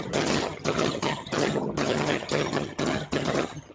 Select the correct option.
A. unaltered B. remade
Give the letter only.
B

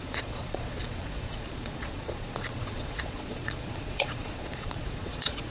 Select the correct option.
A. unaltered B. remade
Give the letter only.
B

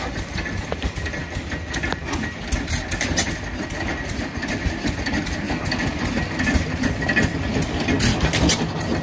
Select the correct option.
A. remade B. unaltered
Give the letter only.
B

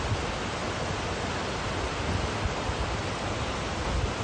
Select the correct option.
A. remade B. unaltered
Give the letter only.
B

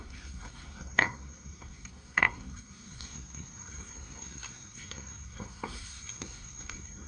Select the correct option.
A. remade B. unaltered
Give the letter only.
A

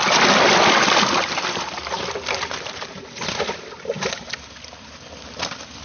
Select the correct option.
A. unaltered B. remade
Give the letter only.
A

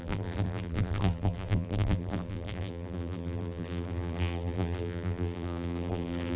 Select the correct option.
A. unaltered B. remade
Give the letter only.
B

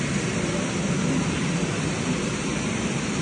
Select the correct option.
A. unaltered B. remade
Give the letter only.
A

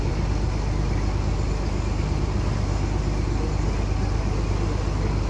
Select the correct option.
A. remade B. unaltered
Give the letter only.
B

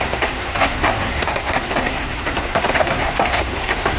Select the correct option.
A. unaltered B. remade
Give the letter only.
B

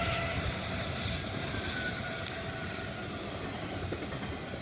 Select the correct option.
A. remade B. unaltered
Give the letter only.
B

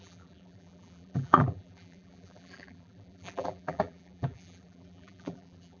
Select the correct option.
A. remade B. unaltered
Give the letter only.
A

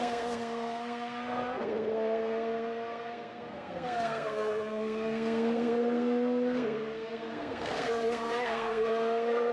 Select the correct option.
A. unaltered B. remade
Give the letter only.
B